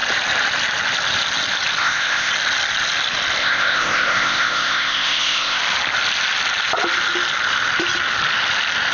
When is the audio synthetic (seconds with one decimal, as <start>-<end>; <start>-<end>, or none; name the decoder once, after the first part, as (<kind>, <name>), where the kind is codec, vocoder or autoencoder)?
1.8-2.3 (codec, ZipCodec); 3.4-5.6